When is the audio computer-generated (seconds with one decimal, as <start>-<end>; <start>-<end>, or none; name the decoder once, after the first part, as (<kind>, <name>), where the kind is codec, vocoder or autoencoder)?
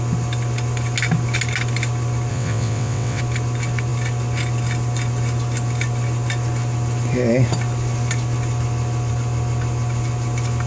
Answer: 2.3-3.2 (vocoder, WaveNeXt)